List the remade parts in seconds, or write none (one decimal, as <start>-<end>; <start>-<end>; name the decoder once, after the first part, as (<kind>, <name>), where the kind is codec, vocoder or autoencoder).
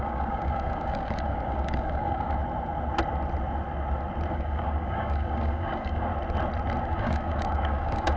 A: 0.0-2.4 (codec, DAC); 4.3-6.1; 6.8-8.2